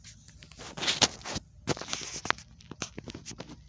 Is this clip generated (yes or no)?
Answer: no